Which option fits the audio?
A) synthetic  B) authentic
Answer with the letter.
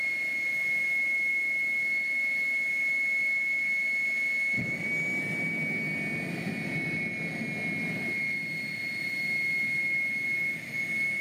B